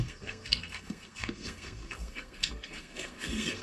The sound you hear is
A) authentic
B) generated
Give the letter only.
B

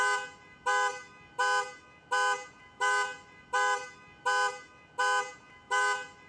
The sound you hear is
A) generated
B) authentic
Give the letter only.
B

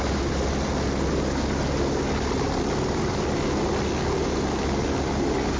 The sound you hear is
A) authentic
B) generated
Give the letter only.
A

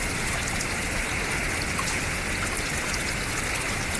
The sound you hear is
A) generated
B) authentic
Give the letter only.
B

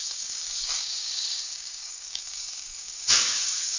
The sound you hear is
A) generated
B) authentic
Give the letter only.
A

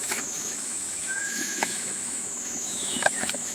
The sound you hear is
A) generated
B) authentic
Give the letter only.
A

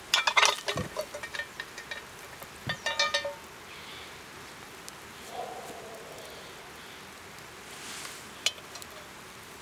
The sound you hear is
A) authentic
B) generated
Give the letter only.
A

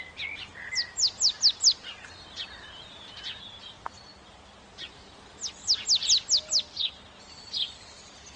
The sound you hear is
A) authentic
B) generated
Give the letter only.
A